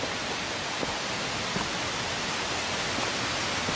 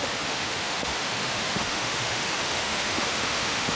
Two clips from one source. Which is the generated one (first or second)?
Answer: second